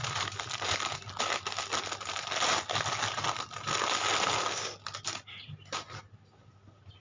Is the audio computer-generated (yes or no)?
no